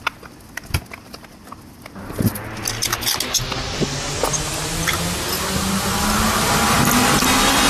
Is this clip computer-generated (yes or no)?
no